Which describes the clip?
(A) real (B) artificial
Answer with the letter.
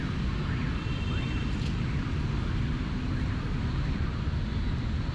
A